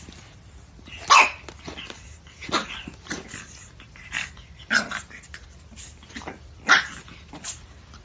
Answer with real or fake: real